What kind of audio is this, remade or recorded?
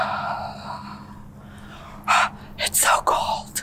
recorded